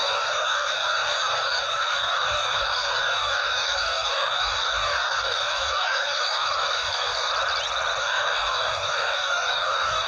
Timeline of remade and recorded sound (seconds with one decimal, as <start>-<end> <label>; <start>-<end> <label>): 0.0-7.3 remade; 7.3-8.0 recorded; 8.0-10.1 remade